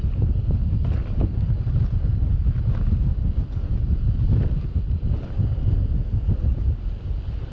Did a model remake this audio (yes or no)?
no